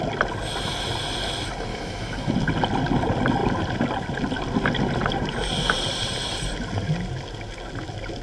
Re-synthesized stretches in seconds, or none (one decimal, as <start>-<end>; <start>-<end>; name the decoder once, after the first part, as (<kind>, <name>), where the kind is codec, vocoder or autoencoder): 1.7-2.3 (autoencoder, DAC-VAE)